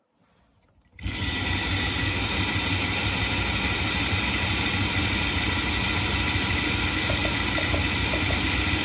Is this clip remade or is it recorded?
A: recorded